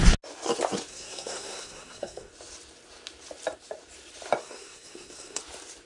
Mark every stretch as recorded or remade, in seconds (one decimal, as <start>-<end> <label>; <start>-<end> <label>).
0.0-0.9 recorded; 0.9-2.3 remade; 2.3-4.4 recorded; 4.4-5.4 remade; 5.4-5.9 recorded